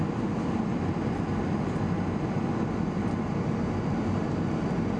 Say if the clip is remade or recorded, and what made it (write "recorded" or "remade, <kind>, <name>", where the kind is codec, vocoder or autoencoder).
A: recorded